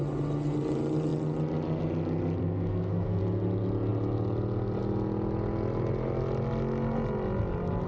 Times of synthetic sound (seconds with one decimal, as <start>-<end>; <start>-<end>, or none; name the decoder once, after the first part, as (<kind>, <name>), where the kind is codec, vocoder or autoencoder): 2.4-3.2 (codec, SNAC)